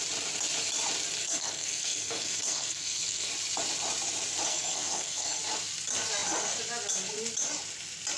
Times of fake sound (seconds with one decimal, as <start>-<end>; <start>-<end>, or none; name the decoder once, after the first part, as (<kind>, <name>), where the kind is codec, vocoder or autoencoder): 1.2-3.3 (codec, SNAC); 4.5-5.4